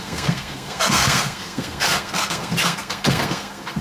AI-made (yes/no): yes